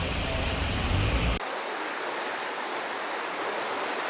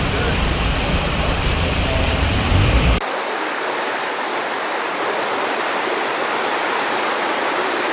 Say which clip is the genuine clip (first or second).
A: first